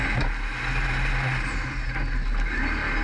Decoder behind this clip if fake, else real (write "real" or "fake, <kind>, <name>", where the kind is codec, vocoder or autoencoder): real